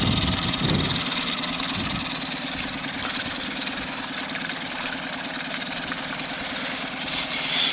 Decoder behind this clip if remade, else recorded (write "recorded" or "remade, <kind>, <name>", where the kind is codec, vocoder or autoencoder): recorded